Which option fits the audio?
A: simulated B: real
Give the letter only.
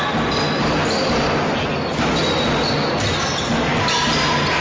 B